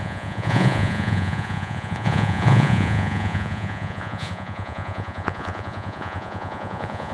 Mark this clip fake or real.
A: fake